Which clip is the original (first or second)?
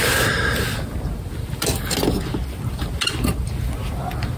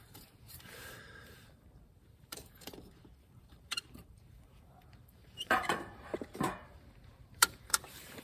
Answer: first